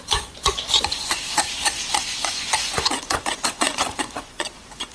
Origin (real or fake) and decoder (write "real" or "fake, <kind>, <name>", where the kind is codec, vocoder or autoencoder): fake, vocoder, Vocos